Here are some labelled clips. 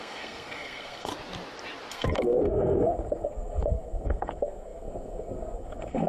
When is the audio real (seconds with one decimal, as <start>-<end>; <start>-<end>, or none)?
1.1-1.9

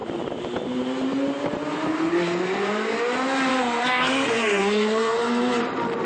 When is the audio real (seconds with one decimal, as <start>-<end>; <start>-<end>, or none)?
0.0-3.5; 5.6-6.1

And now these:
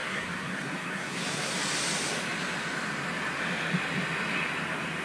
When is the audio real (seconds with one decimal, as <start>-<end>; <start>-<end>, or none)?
1.5-5.0

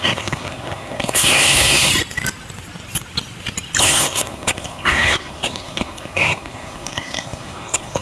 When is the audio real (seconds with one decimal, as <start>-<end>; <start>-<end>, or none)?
1.9-3.8

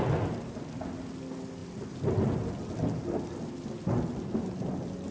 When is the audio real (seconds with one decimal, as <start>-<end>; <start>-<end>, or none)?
0.0-5.1